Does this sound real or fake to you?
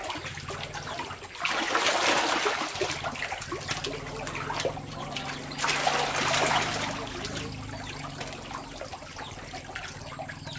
real